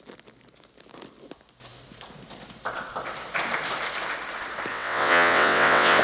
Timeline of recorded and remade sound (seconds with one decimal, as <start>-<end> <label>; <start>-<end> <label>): 0.0-4.7 recorded; 4.7-6.0 remade